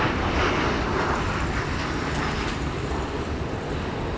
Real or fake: fake